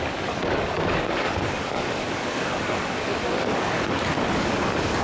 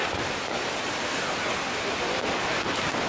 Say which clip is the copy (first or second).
first